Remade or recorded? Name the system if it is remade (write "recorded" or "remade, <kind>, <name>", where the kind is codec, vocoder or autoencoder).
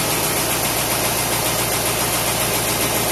recorded